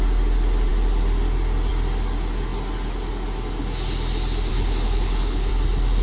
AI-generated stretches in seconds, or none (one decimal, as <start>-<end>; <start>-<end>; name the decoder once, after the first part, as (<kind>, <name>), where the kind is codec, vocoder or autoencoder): 4.5-5.5 (codec, HILCodec)